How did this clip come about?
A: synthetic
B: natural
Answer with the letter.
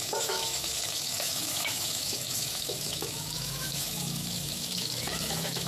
A